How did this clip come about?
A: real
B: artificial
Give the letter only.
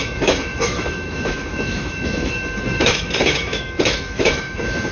B